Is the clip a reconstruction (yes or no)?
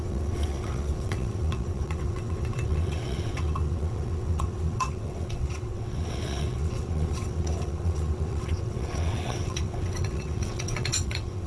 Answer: yes